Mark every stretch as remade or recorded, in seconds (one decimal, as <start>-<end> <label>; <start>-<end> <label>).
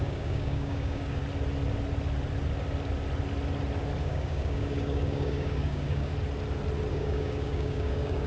0.0-1.2 remade; 1.2-4.0 recorded; 4.0-6.1 remade; 6.1-6.9 recorded; 6.9-8.3 remade